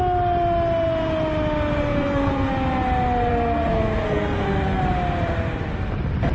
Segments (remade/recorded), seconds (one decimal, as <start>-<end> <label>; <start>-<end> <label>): 0.0-1.8 recorded; 1.8-2.5 remade; 2.5-3.3 recorded; 3.3-4.8 remade; 4.8-6.3 recorded